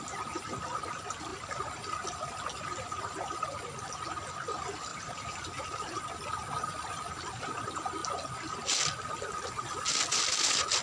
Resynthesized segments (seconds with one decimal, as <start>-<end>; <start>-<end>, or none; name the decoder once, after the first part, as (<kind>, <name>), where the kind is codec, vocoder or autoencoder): 4.9-6.1 (vocoder, BigVGAN v2)